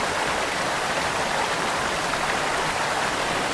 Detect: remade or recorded recorded